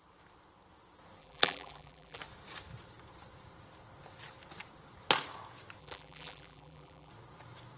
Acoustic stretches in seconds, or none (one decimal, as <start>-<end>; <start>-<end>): 0.0-1.2; 2.2-5.8; 7.1-7.8